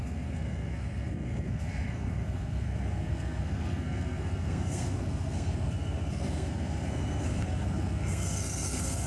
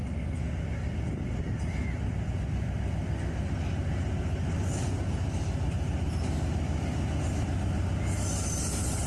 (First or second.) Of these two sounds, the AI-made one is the first